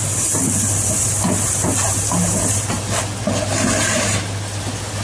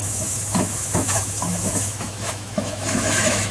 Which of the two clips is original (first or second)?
first